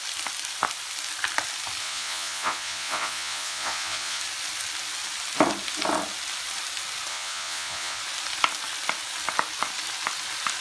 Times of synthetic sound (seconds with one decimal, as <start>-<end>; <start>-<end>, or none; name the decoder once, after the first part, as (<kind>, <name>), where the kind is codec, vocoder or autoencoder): 1.8-4.2 (vocoder, Vocos); 7.1-8.0